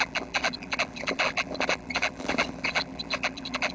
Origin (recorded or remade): remade